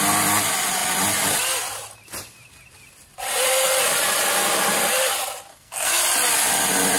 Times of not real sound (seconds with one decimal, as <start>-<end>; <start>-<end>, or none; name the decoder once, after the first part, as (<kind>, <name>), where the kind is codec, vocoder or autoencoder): 5.5-6.0 (codec, SNAC)